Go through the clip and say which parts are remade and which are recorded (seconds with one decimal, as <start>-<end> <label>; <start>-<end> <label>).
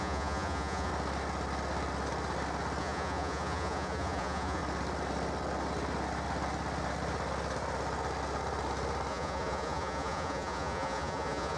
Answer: 0.0-0.9 remade; 0.9-2.8 recorded; 2.8-4.6 remade; 4.6-9.1 recorded; 9.1-11.6 remade